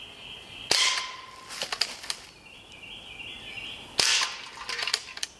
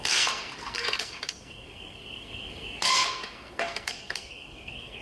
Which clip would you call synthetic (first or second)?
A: second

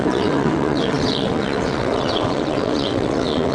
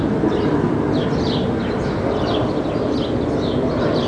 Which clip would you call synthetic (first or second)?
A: first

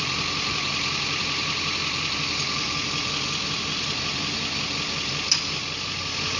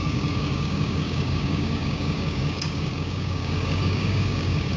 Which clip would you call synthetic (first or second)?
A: second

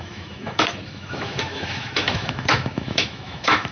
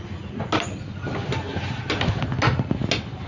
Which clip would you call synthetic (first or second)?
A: first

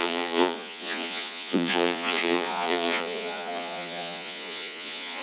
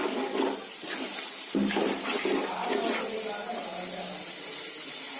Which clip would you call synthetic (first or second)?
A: first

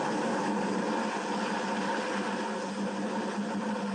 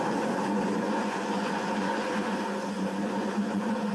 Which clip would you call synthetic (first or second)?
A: second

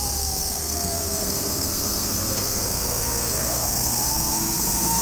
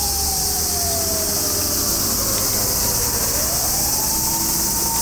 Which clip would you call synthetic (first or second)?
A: first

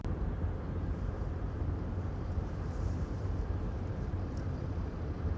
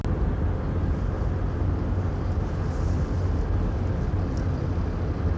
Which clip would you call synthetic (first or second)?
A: first